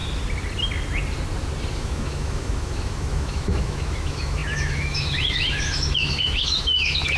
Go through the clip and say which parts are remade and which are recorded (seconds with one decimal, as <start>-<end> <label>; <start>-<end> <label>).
0.0-1.7 recorded; 1.7-7.2 remade